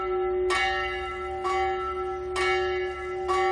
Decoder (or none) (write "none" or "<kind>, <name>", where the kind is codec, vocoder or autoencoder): none